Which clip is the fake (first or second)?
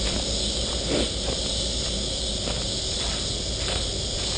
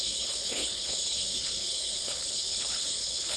second